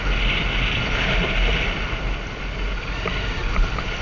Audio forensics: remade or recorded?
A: recorded